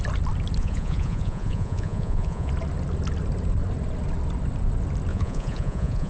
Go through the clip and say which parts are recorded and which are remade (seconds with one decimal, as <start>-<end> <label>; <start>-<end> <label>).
0.0-0.6 recorded; 0.6-2.5 remade; 2.5-5.1 recorded; 5.1-6.1 remade